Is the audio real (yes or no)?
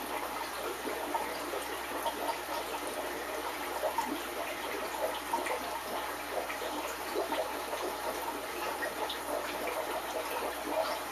no